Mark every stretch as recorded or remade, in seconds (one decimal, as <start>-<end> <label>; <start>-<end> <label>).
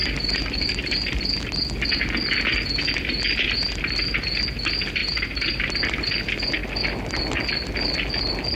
0.0-1.4 remade; 1.4-5.0 recorded; 5.0-5.8 remade; 5.8-8.6 recorded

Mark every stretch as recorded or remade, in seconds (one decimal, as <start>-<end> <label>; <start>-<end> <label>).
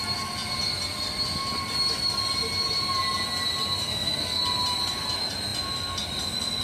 0.0-3.9 recorded; 3.9-4.4 remade; 4.4-6.6 recorded